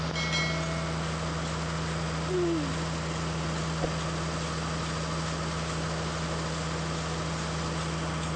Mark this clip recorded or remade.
recorded